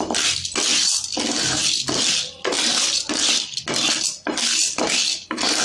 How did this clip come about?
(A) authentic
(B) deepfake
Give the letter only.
A